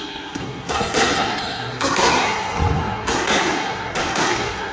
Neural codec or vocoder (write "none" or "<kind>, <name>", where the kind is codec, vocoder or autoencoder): codec, SNAC